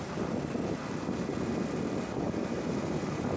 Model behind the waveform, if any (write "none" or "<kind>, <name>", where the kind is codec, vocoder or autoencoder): none